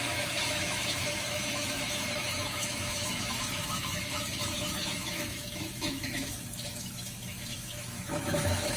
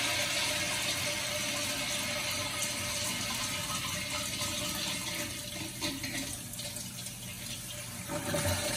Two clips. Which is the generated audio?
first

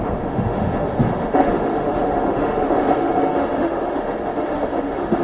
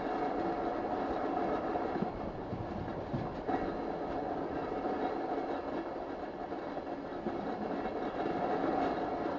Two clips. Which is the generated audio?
first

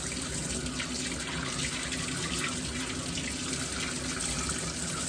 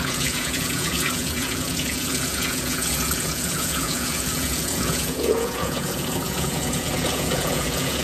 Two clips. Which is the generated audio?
second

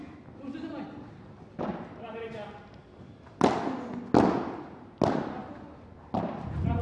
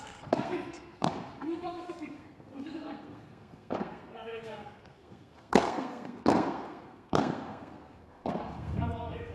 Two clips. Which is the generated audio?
second